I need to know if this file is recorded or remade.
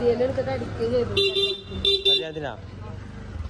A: recorded